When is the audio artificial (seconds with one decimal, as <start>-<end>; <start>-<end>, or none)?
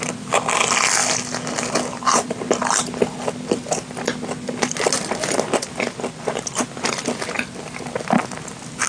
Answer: none